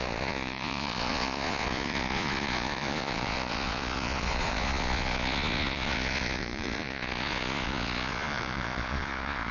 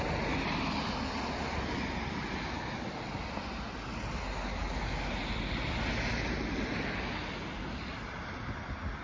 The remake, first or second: first